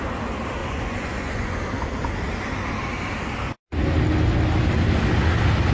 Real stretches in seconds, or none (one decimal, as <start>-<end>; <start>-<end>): 0.0-0.6; 1.6-5.7